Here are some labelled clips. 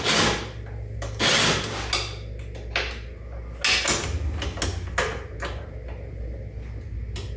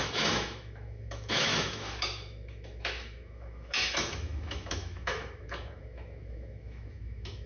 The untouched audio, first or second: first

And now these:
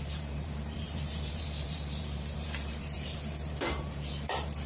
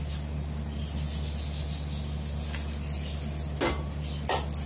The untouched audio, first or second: second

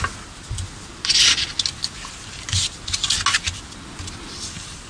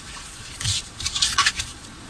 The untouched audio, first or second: first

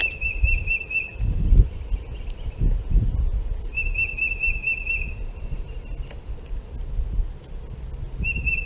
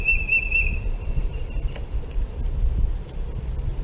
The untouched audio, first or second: first